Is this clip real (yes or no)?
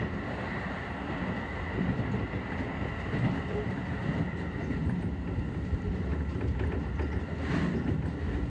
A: yes